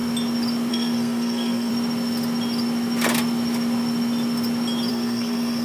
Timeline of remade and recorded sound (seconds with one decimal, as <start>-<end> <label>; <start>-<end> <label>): 0.0-0.7 recorded; 0.7-1.7 remade; 1.7-4.9 recorded; 4.9-5.6 remade